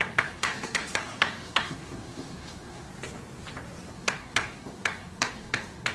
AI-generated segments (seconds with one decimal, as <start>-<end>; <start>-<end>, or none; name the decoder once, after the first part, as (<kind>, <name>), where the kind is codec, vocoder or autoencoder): 0.0-2.9 (codec, SNAC); 3.9-5.9